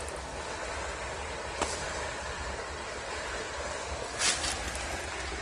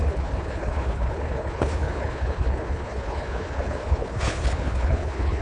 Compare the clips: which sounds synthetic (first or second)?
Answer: second